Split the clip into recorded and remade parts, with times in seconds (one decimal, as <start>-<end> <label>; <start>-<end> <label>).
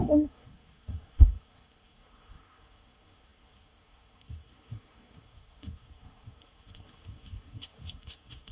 0.0-8.5 remade